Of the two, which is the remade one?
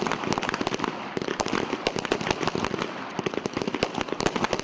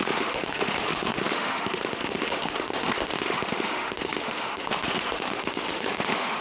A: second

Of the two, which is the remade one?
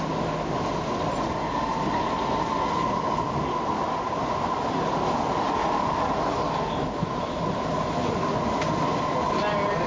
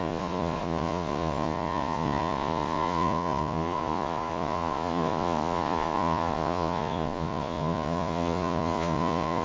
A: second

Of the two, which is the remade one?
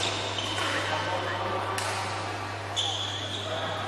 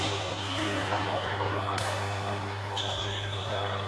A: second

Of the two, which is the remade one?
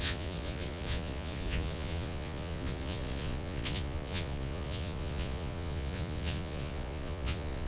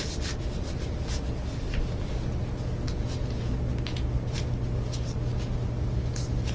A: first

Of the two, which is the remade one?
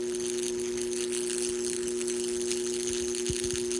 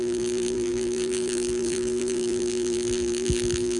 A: second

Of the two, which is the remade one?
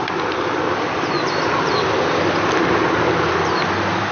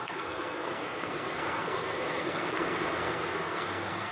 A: second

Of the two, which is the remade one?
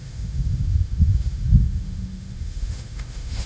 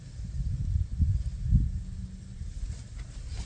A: first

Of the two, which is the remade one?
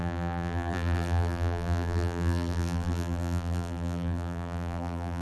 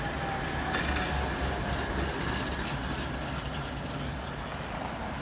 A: first